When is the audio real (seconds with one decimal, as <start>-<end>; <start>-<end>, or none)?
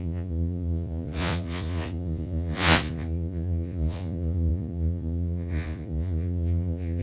none